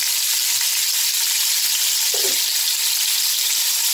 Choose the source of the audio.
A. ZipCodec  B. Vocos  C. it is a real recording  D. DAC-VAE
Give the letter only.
C